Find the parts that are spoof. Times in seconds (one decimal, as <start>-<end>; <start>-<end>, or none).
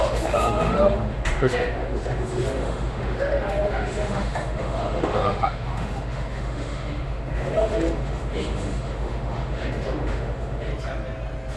0.0-10.7